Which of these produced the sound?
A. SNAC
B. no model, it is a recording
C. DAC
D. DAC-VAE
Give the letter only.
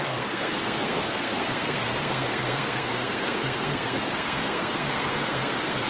A